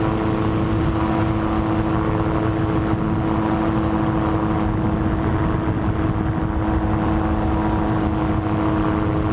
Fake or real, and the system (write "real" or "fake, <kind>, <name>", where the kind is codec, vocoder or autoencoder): real